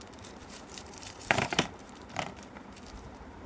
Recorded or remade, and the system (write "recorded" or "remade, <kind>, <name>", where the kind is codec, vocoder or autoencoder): remade, vocoder, BigVGAN v2